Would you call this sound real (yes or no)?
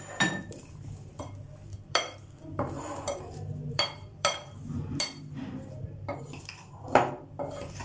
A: no